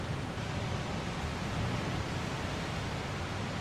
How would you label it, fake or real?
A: real